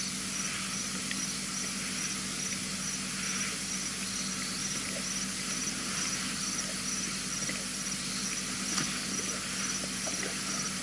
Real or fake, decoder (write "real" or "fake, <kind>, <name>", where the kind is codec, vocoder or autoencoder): real